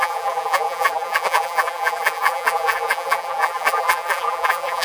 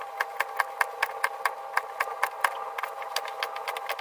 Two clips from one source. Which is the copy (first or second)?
first